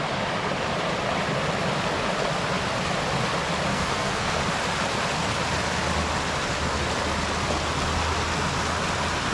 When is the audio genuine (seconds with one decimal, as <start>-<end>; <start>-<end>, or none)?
0.0-3.7; 4.4-9.3